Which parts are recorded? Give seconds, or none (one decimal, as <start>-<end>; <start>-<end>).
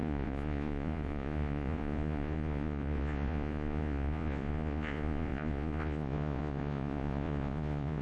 none